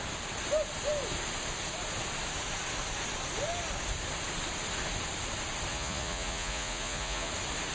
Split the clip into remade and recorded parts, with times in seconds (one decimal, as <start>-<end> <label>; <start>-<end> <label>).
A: 0.0-5.7 recorded; 5.7-7.3 remade; 7.3-7.7 recorded